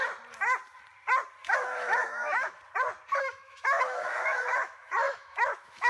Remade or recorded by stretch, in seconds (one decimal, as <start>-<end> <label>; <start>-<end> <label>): 0.0-1.4 recorded; 1.4-2.6 remade; 2.6-3.2 recorded; 3.2-5.9 remade